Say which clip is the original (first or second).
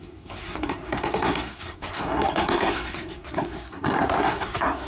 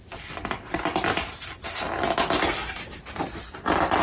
second